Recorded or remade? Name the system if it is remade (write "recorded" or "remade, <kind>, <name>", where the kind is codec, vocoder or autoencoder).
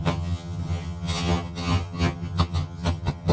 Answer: remade, vocoder, HiFi-GAN